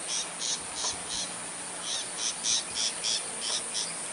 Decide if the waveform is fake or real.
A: real